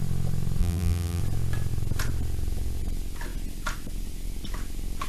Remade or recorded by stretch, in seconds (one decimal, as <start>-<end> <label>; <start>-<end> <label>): 0.0-0.6 recorded; 0.6-1.2 remade; 1.2-5.1 recorded